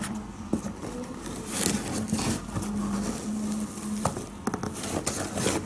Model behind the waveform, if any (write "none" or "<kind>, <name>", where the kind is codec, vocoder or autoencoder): none